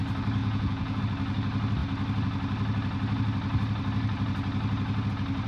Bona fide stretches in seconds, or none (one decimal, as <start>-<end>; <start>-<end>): 0.0-0.4; 1.0-5.5